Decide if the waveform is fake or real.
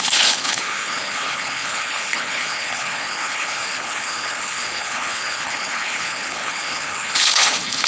fake